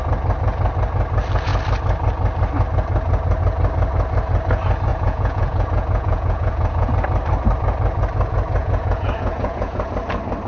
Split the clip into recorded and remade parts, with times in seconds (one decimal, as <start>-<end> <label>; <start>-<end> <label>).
0.0-4.9 recorded; 4.9-6.9 remade; 6.9-8.6 recorded; 8.6-9.9 remade; 9.9-10.5 recorded